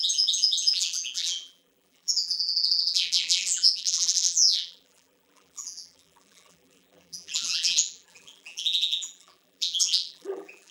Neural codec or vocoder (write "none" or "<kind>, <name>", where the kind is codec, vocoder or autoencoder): vocoder, BigVGAN v2